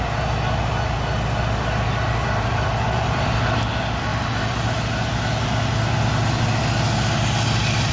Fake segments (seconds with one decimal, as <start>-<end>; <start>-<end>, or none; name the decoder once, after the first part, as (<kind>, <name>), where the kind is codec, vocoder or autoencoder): 2.2-3.6 (vocoder, BigVGAN v2); 4.1-4.7